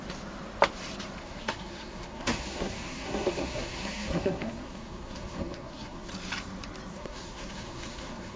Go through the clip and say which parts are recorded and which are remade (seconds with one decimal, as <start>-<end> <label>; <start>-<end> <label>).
0.0-1.2 recorded; 1.2-6.1 remade; 6.1-6.9 recorded; 6.9-8.4 remade